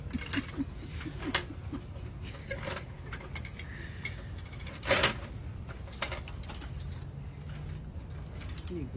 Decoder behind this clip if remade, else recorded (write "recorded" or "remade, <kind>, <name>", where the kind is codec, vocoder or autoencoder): recorded